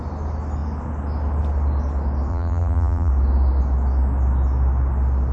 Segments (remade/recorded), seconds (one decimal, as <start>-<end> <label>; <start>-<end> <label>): 0.0-2.3 recorded; 2.3-3.1 remade; 3.1-5.3 recorded